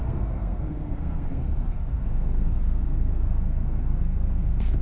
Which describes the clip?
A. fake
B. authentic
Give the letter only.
A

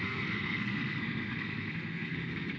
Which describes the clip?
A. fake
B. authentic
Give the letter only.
A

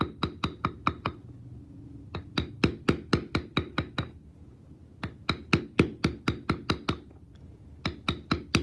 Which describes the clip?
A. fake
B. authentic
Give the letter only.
B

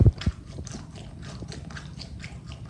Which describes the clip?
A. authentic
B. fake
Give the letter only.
A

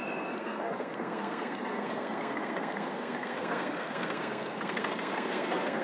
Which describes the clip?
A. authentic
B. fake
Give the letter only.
B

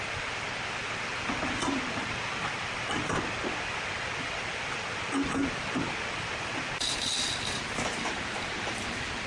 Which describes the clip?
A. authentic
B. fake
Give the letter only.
A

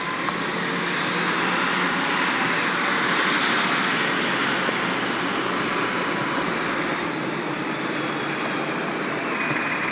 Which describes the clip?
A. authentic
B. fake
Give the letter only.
A